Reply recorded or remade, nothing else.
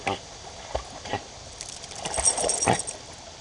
recorded